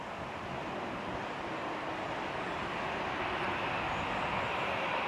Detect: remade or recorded recorded